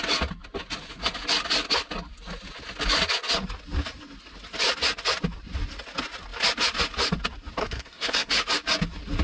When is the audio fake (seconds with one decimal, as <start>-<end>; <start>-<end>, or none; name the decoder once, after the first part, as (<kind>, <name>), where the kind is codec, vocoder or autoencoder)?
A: 7.6-8.3 (codec, SNAC)